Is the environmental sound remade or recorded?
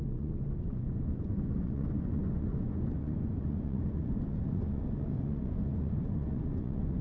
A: remade